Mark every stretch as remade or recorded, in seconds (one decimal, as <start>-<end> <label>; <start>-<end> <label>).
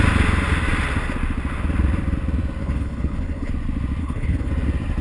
0.0-2.6 recorded; 2.6-3.5 remade; 3.5-4.0 recorded; 4.0-4.5 remade; 4.5-5.0 recorded